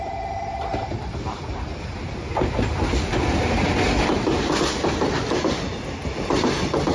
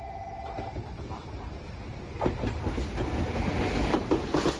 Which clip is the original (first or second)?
second